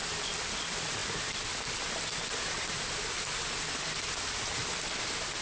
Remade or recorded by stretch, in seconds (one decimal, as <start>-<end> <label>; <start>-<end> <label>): 0.0-5.4 recorded